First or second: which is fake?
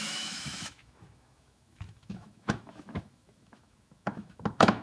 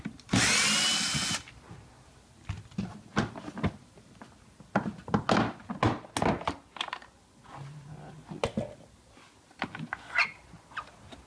first